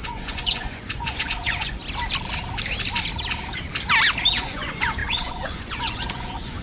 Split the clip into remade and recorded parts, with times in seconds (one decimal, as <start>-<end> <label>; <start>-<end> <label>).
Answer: 0.0-1.8 remade; 1.8-4.3 recorded; 4.3-6.6 remade